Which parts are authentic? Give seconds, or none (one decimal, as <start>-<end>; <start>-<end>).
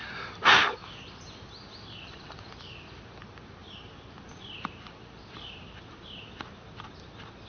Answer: 0.0-7.5